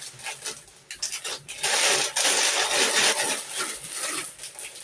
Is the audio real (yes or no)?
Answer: yes